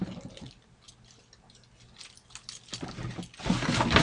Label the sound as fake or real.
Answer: real